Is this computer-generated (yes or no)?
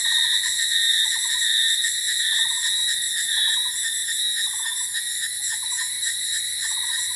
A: no